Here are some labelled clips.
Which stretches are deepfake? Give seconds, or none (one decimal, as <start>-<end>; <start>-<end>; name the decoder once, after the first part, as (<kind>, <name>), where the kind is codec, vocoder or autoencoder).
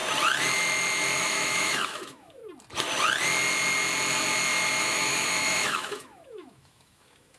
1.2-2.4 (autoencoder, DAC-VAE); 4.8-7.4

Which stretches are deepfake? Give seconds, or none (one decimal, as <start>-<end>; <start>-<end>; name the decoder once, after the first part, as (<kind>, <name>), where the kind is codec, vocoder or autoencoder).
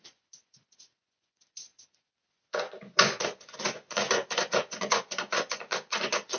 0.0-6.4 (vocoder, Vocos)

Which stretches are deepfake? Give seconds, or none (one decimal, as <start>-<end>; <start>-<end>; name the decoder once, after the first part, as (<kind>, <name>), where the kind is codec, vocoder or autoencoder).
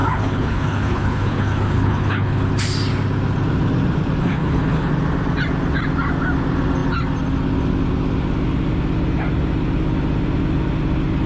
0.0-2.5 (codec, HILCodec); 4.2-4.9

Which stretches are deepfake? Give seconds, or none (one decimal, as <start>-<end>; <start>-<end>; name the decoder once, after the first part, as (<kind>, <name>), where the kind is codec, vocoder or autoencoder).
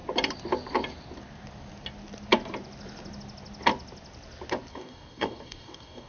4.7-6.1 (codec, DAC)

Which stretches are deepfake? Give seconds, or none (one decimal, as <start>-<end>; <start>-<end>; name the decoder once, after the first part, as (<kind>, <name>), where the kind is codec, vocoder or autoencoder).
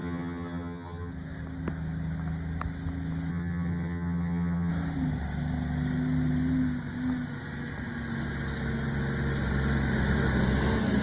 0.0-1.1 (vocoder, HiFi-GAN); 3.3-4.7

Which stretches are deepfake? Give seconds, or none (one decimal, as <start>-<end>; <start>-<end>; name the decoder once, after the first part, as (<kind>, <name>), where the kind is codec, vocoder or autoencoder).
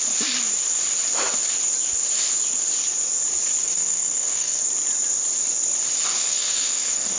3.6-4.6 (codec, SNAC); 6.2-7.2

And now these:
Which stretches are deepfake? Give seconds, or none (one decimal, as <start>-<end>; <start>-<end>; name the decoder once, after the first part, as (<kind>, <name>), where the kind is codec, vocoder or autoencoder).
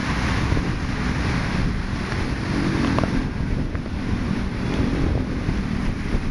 3.8-6.3 (vocoder, BigVGAN v2)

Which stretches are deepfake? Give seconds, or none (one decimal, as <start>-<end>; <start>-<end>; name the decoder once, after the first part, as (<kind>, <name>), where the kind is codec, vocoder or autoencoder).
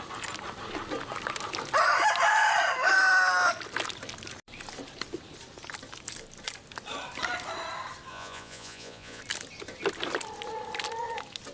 8.1-9.2 (vocoder, Vocos)